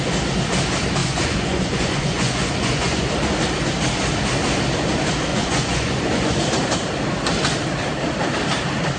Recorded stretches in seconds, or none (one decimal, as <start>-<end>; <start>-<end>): 0.0-1.0; 3.1-5.3; 6.4-9.0